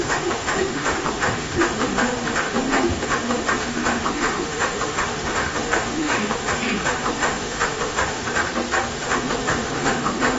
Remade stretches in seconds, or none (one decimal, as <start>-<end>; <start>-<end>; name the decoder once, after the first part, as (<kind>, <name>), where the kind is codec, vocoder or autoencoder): 0.0-8.4 (autoencoder, DAC-VAE); 8.9-10.4